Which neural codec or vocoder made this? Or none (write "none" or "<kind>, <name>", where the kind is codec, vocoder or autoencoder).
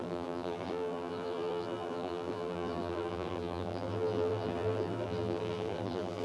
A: vocoder, BigVGAN v2